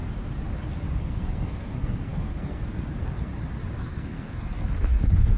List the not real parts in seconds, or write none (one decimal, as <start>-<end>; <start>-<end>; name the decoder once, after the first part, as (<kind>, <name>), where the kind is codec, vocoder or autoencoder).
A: 1.0-3.3 (codec, SNAC); 3.8-5.4